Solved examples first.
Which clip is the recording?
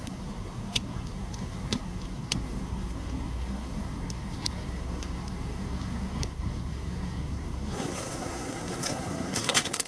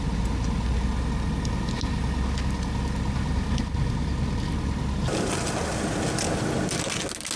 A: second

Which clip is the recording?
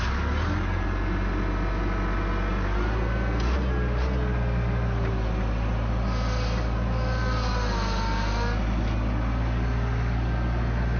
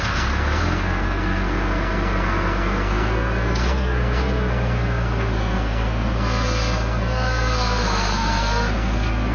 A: first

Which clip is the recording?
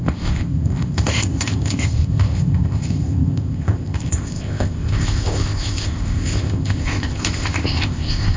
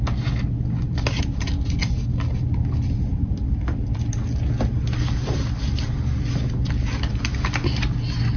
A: second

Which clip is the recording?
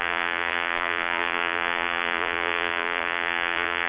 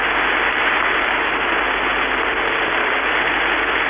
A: second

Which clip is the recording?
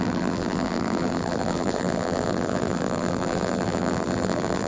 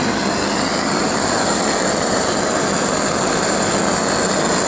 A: second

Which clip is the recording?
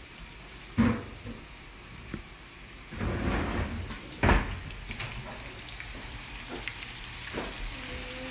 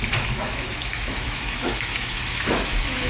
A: first